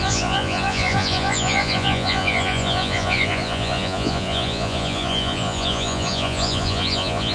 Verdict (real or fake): fake